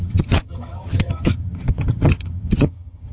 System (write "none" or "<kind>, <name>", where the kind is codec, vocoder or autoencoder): vocoder, HiFi-GAN